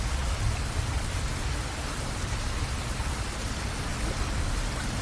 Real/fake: real